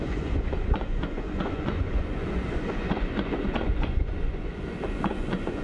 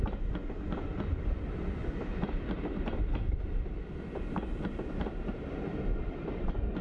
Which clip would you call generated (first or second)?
first